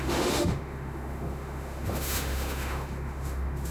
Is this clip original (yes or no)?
no